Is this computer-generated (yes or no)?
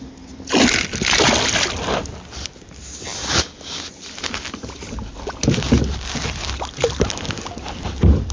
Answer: no